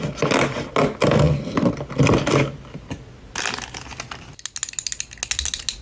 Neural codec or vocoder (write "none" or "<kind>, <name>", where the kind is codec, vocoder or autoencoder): none